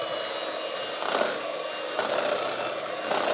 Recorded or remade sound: recorded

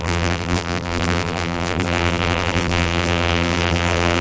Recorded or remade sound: remade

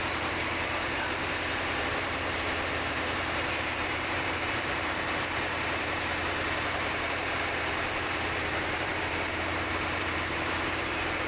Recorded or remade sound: remade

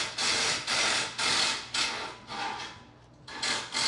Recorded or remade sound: recorded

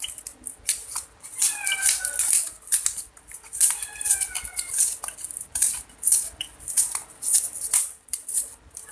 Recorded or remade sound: remade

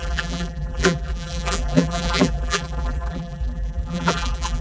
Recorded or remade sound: remade